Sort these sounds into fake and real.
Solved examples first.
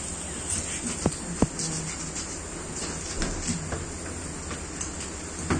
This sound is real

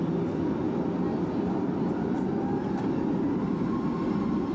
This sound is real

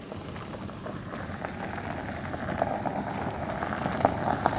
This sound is real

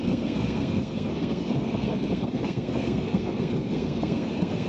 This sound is fake